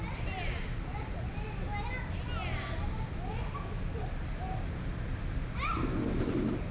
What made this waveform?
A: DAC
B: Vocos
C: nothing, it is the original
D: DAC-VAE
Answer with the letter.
C